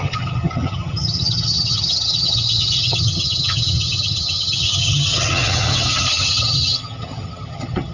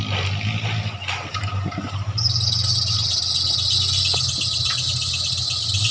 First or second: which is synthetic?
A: first